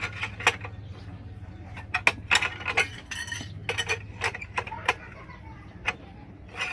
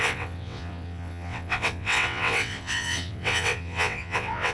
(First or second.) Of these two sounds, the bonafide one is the first